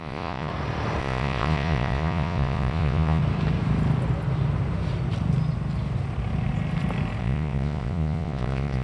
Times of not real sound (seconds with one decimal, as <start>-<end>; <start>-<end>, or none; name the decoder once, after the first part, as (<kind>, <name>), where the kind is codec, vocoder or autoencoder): 0.0-0.5 (vocoder, Vocos); 1.0-3.2; 7.2-8.8